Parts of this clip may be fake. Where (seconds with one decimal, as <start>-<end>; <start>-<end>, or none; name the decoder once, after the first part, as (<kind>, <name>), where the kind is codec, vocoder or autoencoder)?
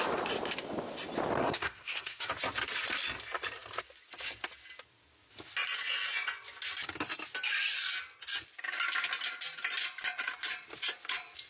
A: 1.4-2.2 (codec, SNAC)